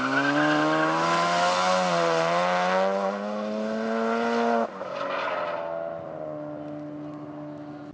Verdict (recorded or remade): recorded